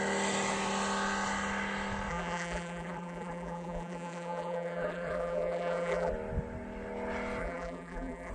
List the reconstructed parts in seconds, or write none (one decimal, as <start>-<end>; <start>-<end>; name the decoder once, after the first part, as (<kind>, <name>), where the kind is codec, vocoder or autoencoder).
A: 2.1-6.1 (vocoder, BigVGAN v2); 7.4-8.3